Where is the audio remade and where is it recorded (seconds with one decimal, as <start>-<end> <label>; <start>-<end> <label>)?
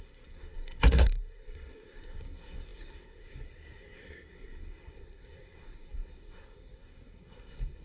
0.0-7.8 remade